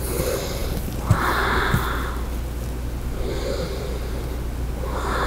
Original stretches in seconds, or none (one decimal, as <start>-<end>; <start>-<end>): 0.0-5.3